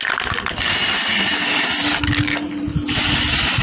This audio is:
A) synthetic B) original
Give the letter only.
B